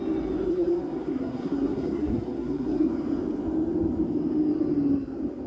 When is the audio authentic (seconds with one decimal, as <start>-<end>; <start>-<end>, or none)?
0.0-0.5; 2.9-5.5